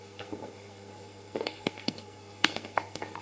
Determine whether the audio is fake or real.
fake